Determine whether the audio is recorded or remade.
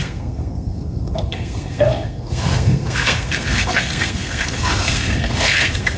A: remade